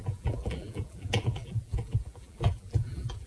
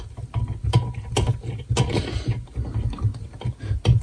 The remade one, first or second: first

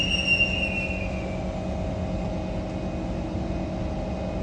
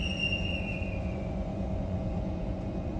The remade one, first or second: second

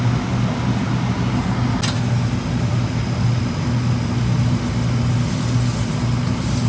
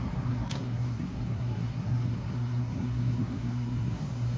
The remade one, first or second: second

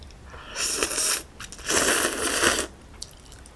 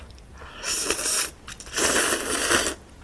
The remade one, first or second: second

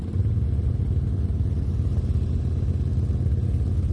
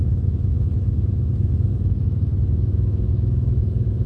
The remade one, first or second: second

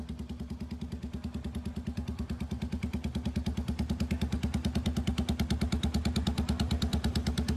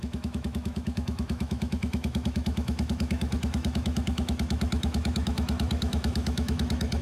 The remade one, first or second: second